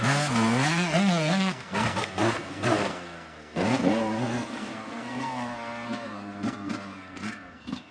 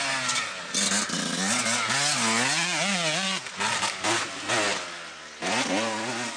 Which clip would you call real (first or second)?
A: second